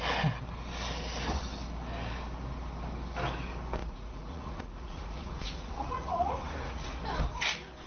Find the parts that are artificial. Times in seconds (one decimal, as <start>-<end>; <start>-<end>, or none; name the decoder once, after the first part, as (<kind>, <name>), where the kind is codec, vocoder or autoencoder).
3.8-7.0 (vocoder, Vocos)